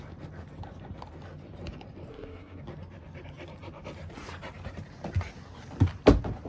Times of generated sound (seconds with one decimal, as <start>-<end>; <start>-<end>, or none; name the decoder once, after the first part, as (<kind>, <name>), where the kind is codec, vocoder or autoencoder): 2.1-2.6 (codec, SNAC)